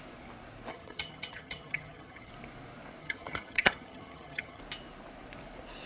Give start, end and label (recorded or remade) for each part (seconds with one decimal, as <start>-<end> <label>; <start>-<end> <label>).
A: 0.0-0.7 recorded; 0.7-2.3 remade; 2.3-3.0 recorded; 3.0-4.6 remade; 4.6-5.9 recorded